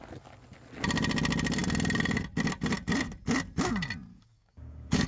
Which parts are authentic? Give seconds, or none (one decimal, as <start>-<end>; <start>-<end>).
0.0-4.1